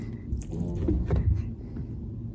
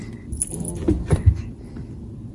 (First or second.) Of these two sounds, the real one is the first